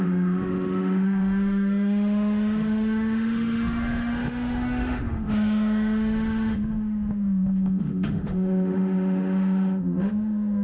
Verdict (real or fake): fake